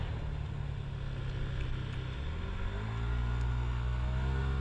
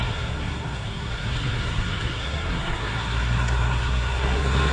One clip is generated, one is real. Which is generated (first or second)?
second